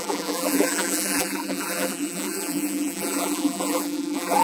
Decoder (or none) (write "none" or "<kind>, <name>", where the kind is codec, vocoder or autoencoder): vocoder, BigVGAN v2